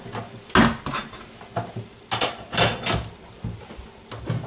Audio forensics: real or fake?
real